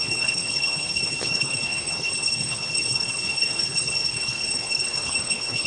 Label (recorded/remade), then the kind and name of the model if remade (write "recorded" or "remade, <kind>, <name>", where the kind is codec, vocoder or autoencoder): remade, codec, HILCodec